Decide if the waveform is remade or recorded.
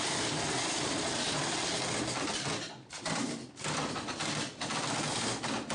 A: recorded